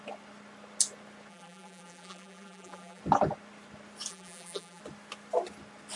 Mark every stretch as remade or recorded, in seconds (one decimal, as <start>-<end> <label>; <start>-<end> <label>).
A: 0.0-1.3 recorded; 1.3-3.0 remade; 3.0-4.1 recorded; 4.1-4.8 remade; 4.8-6.0 recorded